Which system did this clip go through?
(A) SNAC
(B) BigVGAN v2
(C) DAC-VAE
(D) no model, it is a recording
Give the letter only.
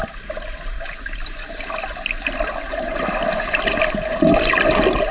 D